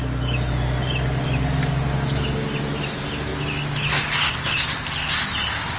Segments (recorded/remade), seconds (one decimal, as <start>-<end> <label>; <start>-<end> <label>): 0.0-5.8 recorded